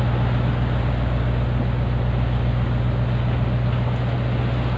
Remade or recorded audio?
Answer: recorded